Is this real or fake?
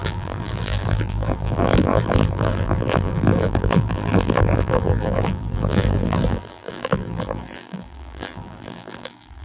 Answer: fake